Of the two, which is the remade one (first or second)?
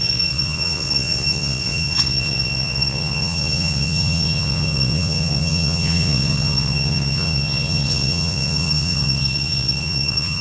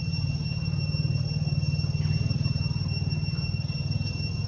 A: first